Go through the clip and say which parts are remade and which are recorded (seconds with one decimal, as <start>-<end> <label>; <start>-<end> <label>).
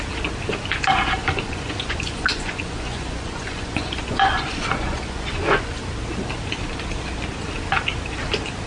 0.0-1.2 recorded; 1.2-5.8 remade; 5.8-8.7 recorded